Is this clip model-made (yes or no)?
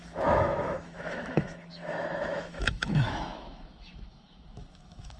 yes